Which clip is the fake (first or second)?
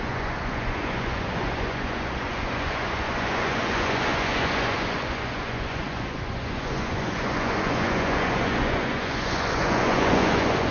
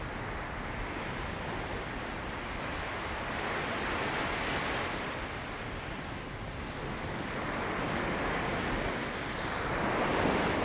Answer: first